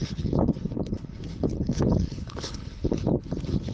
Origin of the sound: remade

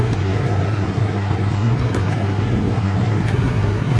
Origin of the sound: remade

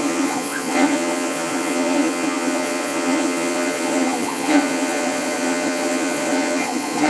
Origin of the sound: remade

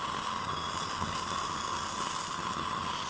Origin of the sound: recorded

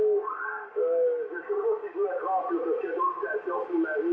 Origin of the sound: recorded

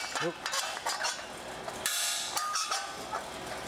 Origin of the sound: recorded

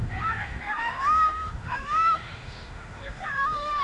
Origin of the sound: remade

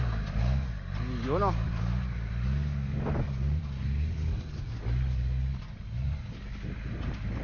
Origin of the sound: recorded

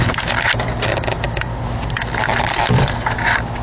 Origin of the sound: recorded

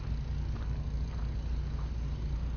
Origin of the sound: recorded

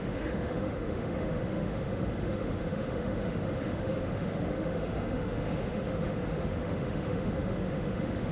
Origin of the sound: remade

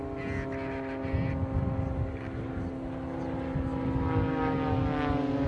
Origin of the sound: recorded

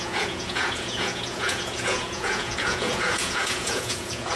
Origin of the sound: remade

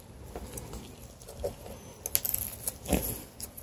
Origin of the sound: recorded